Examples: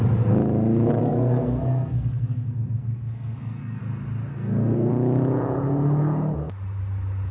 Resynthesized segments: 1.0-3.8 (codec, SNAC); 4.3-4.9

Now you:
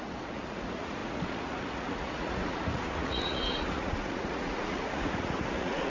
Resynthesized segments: 0.0-5.9 (vocoder, Vocos)

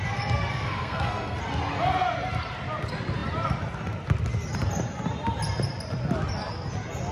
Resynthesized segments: 0.5-1.4 (codec, SNAC)